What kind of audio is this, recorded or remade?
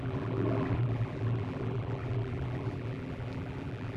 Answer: remade